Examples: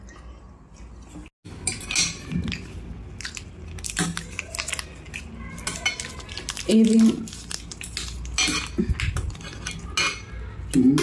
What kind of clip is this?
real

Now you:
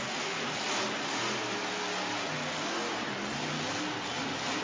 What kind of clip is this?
real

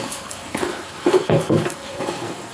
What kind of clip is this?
fake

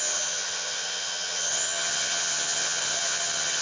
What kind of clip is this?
fake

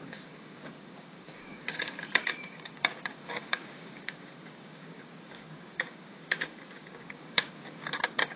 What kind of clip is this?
fake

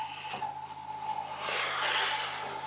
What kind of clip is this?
real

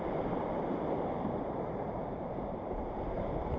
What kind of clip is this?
fake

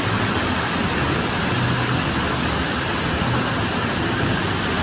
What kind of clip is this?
real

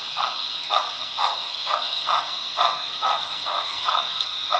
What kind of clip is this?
fake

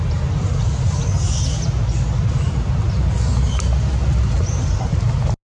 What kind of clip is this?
real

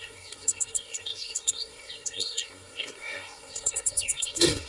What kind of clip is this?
fake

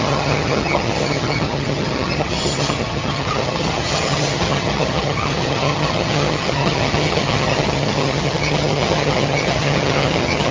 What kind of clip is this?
fake